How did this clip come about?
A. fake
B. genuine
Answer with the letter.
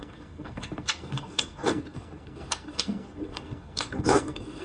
A